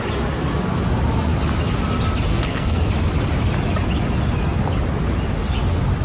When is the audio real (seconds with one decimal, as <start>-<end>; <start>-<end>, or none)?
0.0-2.3; 2.9-6.0